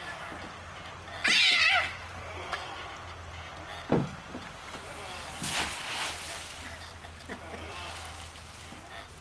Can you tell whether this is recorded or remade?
recorded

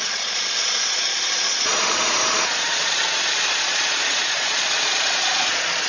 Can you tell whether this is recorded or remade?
remade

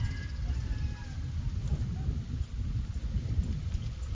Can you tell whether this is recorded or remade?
recorded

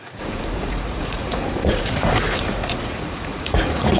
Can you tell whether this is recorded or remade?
remade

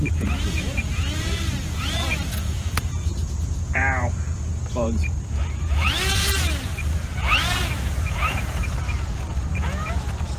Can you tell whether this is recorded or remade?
remade